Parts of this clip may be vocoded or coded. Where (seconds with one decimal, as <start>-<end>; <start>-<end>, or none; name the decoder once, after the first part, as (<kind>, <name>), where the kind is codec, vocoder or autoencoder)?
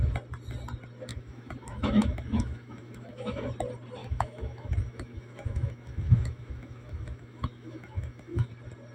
1.1-3.5 (autoencoder, DAC-VAE); 4.0-8.5